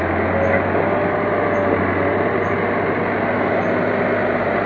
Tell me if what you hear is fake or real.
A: real